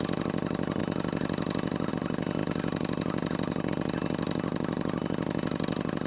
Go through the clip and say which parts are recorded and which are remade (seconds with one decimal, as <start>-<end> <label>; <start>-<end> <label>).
0.0-6.1 recorded